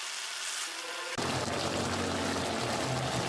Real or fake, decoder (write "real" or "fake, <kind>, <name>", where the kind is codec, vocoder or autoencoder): real